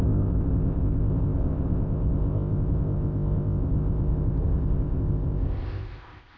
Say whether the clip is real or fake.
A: fake